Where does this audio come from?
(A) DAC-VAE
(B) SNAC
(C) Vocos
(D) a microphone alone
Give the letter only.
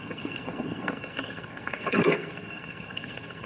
B